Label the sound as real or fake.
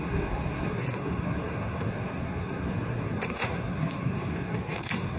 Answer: fake